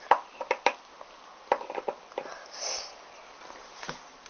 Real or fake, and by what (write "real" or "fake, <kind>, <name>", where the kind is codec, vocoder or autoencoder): real